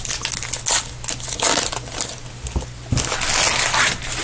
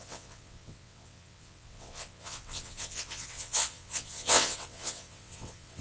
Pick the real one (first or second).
first